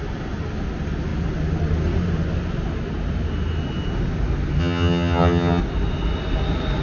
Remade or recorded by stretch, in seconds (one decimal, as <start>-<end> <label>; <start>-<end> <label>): 0.0-4.6 recorded; 4.6-5.6 remade; 5.6-6.8 recorded